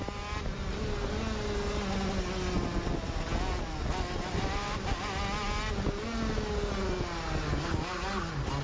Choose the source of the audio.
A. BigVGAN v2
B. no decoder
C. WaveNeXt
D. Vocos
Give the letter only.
B